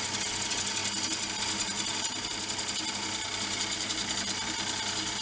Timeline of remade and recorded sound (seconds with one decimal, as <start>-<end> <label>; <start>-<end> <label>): 0.0-5.2 recorded